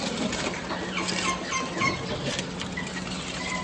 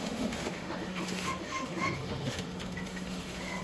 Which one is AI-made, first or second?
second